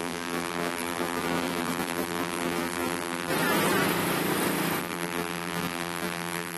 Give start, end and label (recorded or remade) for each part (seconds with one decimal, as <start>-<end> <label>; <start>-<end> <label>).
0.0-3.3 remade; 3.3-4.8 recorded; 4.8-6.6 remade